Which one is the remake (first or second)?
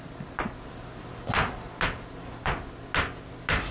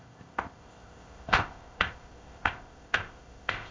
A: second